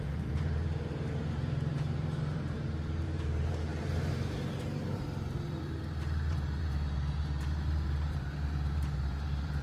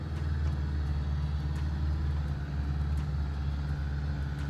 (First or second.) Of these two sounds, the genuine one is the second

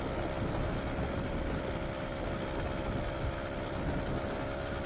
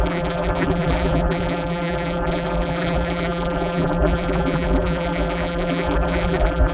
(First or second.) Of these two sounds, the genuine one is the first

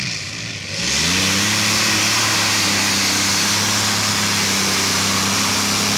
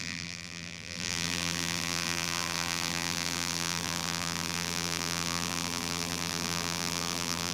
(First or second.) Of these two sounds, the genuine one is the first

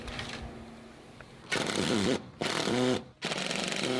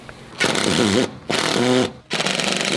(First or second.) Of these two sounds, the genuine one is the second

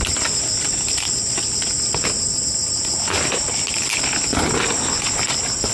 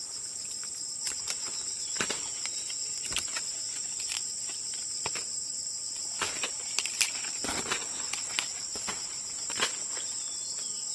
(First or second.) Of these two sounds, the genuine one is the first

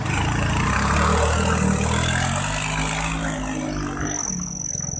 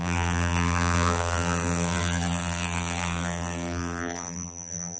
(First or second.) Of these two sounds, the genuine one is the first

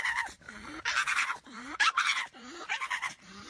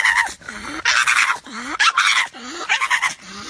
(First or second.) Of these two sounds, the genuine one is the second